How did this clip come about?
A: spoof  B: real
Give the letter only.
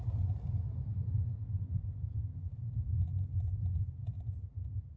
B